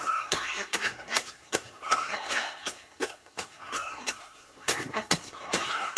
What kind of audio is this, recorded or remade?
remade